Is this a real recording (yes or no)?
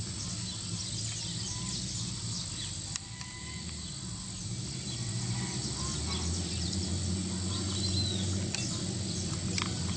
yes